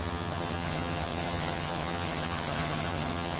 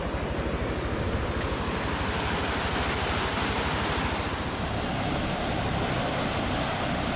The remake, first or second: first